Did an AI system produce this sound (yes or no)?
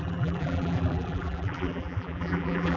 yes